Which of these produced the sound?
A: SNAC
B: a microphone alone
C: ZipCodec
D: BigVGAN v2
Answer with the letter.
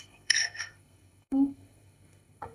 A